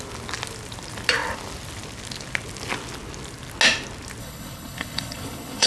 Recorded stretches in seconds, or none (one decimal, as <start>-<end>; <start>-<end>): 0.0-4.2